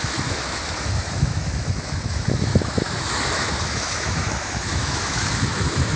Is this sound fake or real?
fake